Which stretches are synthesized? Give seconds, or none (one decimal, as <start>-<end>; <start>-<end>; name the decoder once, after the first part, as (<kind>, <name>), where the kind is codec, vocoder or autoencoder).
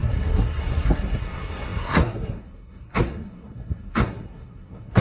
0.0-5.0 (codec, SNAC)